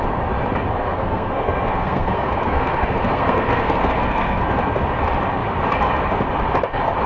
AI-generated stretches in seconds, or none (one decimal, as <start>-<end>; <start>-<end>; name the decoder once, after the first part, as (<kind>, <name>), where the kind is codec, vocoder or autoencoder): 0.8-4.4 (codec, SNAC)